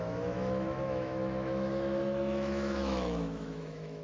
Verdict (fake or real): fake